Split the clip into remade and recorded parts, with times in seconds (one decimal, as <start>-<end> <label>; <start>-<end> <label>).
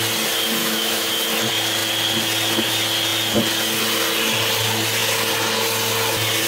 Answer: 0.0-0.6 recorded; 0.6-1.1 remade; 1.1-6.5 recorded